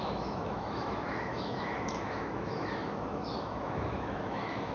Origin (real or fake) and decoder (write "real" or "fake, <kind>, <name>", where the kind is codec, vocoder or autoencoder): fake, autoencoder, DAC-VAE